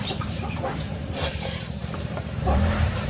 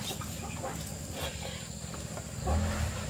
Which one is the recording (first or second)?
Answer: second